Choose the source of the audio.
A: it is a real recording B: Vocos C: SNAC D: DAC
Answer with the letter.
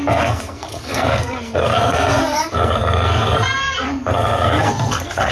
C